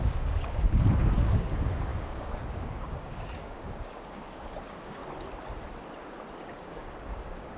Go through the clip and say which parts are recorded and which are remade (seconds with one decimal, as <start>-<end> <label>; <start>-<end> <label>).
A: 0.0-5.0 remade; 5.0-6.4 recorded; 6.4-7.6 remade